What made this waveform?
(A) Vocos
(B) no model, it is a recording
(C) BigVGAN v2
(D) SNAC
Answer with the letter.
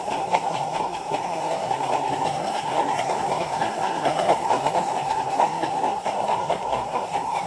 D